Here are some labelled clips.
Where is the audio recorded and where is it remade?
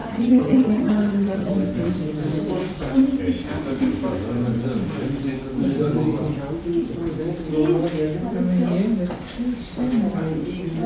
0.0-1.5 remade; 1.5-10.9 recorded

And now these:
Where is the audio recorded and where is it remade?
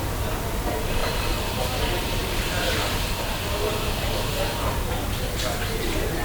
0.0-1.0 recorded; 1.0-1.6 remade; 1.6-6.2 recorded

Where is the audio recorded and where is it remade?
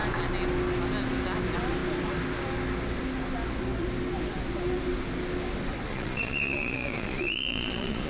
0.0-5.9 recorded; 5.9-8.1 remade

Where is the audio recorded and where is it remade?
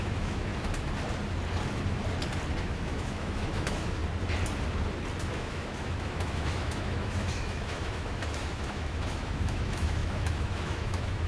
0.0-0.5 remade; 0.5-2.6 recorded; 2.6-4.0 remade; 4.0-5.2 recorded; 5.2-11.3 remade